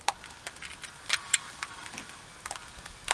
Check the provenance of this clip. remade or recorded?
recorded